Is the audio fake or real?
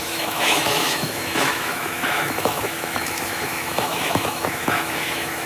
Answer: fake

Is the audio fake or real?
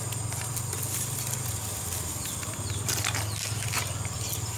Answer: real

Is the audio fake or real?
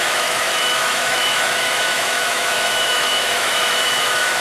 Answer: fake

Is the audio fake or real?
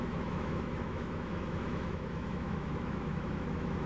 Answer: fake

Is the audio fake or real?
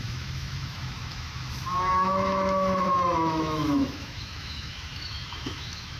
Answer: fake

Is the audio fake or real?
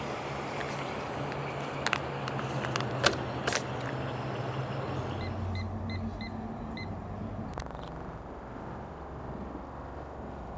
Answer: real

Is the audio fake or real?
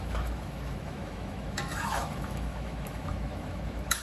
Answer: fake